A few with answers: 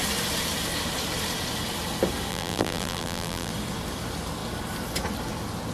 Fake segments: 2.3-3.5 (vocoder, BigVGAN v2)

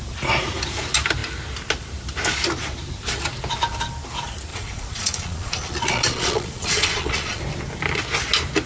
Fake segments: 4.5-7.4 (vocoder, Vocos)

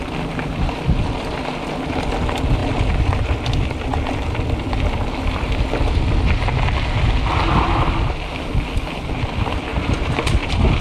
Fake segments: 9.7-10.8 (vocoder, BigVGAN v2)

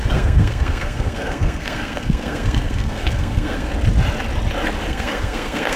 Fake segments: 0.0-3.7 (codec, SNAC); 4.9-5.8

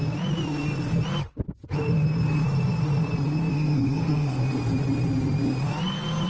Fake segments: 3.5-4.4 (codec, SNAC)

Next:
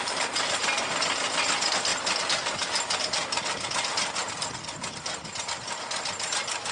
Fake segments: none

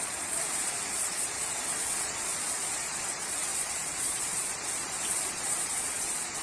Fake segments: 0.0-6.4 (vocoder, Vocos)